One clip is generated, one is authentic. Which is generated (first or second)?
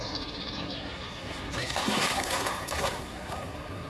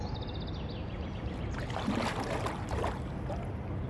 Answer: first